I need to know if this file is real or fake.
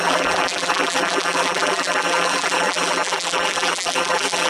fake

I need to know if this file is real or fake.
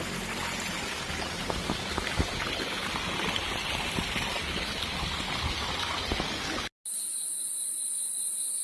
real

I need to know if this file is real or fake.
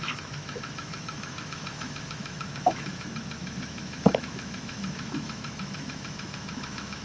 fake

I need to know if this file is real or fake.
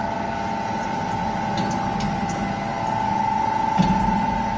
real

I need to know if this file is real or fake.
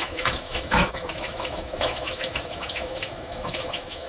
fake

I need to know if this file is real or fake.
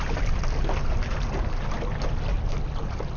real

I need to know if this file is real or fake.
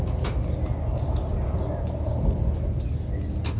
real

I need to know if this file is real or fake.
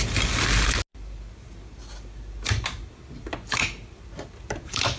real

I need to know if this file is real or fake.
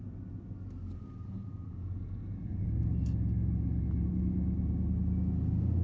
real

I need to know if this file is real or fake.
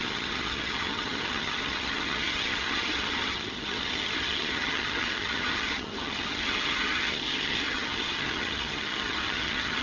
fake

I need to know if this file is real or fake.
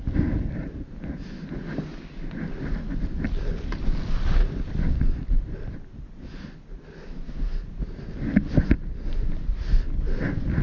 real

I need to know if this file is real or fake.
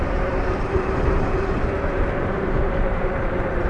fake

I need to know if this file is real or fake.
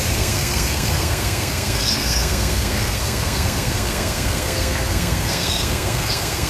fake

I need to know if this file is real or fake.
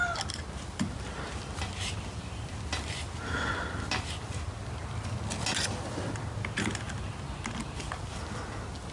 real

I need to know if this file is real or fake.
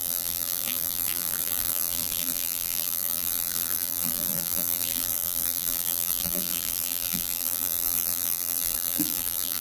fake